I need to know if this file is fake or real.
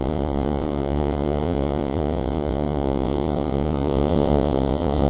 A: fake